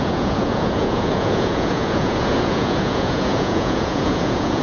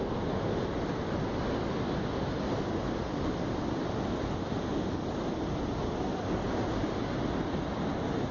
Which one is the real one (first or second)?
second